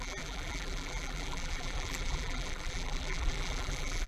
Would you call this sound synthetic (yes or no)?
yes